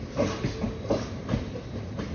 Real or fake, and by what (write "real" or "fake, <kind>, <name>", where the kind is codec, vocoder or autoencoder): real